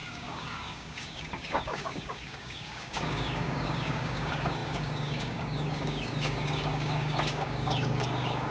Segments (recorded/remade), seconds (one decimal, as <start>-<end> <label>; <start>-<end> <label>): 0.0-8.5 remade